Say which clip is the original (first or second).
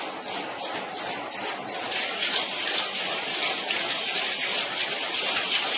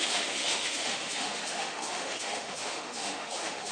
first